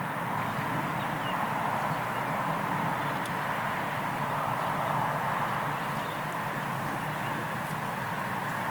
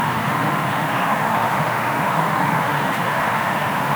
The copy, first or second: second